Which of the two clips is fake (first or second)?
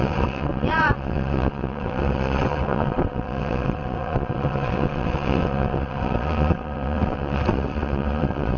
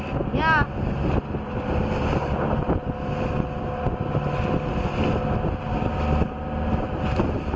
first